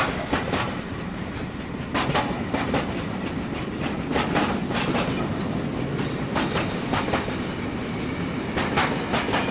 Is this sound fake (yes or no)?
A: no